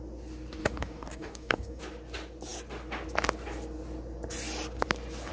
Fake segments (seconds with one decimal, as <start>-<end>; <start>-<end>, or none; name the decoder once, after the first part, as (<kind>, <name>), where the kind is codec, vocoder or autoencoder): 0.6-1.8 (codec, DAC)